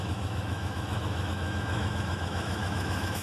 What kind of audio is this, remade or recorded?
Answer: remade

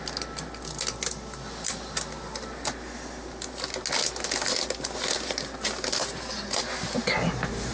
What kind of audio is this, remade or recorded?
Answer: recorded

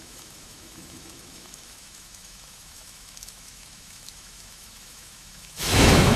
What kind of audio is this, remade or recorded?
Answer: remade